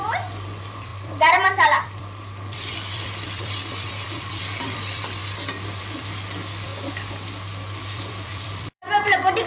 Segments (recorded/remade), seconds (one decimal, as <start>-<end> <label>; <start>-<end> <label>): 0.0-5.2 remade; 5.2-5.8 recorded; 5.8-6.7 remade; 6.7-7.8 recorded; 7.8-9.5 remade